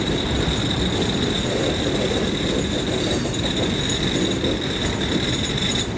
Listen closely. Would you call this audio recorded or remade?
recorded